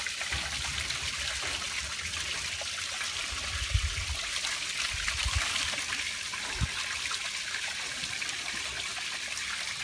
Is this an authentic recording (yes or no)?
yes